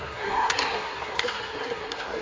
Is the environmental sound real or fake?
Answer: fake